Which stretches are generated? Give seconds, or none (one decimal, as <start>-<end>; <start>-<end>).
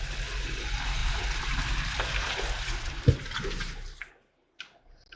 none